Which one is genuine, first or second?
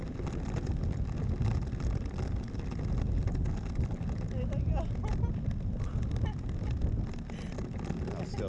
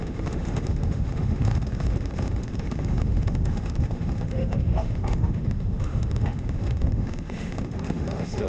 first